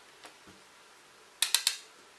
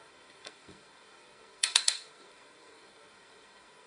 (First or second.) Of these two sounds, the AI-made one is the second